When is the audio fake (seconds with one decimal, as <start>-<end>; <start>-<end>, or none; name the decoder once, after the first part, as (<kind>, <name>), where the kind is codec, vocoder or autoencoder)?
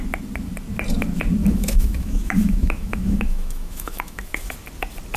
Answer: 1.4-4.5 (autoencoder, DAC-VAE)